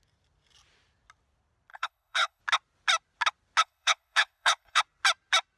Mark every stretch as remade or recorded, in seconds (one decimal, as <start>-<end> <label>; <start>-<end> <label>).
0.0-1.7 recorded; 1.7-2.4 remade; 2.4-3.6 recorded; 3.6-4.8 remade; 4.8-5.6 recorded